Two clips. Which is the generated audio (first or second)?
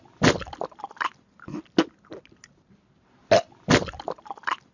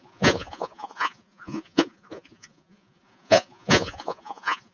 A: second